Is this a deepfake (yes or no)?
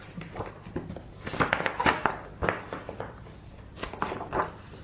no